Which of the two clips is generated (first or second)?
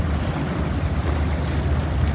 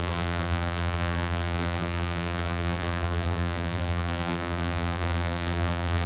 second